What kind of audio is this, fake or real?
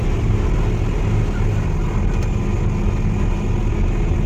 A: real